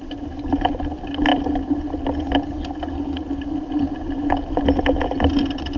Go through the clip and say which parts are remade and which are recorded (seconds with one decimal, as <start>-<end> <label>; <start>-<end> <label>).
0.0-5.8 recorded